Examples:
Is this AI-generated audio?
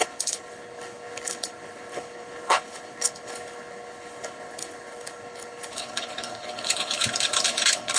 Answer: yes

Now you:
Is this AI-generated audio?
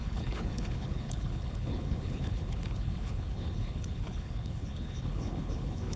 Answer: yes